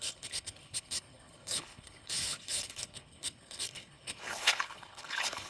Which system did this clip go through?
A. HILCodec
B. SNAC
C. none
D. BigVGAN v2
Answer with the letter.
A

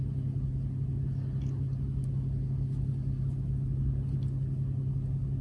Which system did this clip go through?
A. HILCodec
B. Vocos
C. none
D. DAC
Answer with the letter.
C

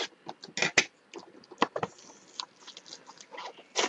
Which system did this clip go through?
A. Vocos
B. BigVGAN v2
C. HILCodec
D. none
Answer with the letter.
D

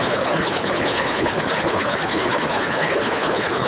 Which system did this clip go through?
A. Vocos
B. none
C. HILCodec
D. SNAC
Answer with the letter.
C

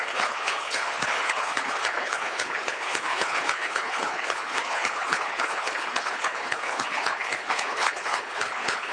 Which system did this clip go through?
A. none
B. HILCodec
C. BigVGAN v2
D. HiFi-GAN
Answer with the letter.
B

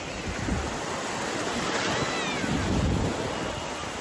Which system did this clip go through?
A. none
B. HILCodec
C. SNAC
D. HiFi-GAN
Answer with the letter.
A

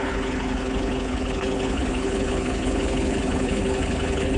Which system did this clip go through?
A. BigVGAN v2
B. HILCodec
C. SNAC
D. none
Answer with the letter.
B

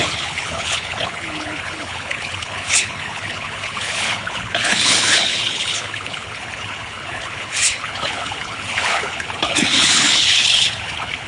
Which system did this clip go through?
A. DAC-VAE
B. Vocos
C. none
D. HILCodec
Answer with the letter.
D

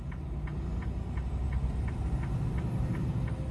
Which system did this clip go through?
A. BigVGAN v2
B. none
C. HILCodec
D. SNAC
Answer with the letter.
B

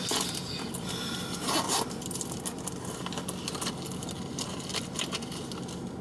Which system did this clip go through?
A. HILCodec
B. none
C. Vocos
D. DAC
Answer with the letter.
B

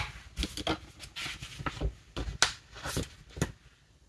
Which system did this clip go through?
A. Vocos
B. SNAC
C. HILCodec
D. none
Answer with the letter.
D